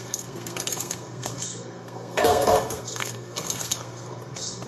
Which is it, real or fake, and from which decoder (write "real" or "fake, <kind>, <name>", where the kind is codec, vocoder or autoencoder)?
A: fake, codec, SNAC